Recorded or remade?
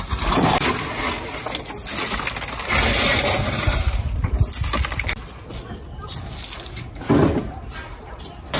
recorded